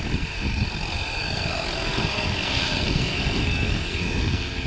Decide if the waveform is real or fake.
fake